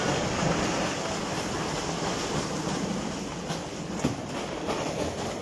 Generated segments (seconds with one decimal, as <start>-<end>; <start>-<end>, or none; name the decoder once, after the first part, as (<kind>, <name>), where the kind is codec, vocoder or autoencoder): 1.3-2.2 (vocoder, BigVGAN v2)